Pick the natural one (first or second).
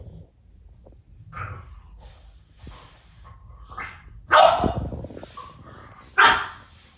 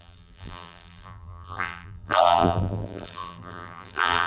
first